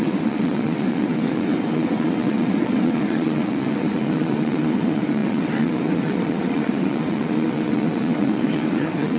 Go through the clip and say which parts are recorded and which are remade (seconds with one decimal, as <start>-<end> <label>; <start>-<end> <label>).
0.0-9.2 remade